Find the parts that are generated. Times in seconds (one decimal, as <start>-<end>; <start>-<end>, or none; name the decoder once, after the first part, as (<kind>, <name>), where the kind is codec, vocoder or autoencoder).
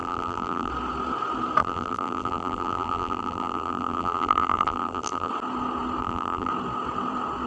0.0-0.7 (vocoder, BigVGAN v2); 1.6-5.3; 6.0-6.5